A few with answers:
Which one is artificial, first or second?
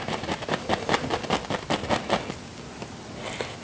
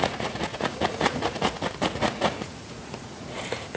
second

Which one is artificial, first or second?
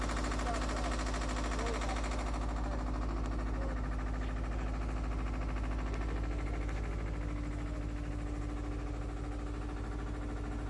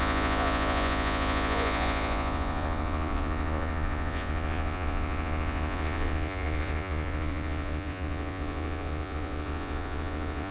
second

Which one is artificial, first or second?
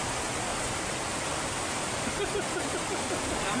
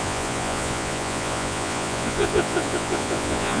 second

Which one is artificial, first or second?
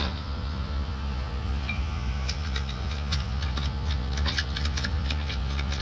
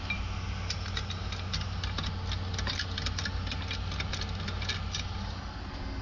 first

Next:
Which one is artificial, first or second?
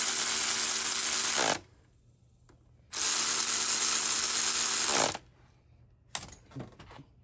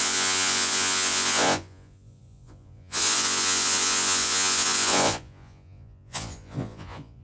second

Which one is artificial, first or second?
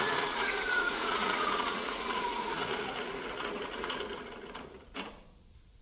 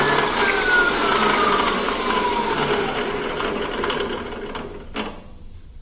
first